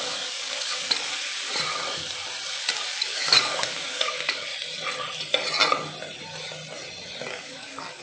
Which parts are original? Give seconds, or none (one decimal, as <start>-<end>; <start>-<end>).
1.5-2.7; 4.5-7.3